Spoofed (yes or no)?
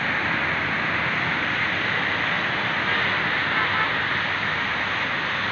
no